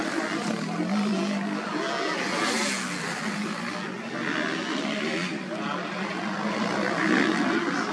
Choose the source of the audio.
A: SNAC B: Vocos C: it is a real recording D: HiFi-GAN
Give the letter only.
C